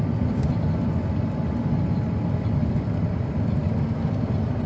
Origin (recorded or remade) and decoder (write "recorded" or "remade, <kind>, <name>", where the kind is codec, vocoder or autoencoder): recorded